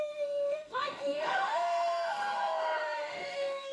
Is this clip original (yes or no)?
no